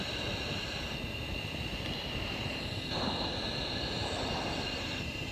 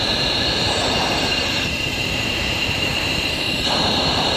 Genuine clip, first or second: first